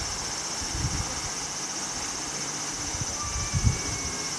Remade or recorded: recorded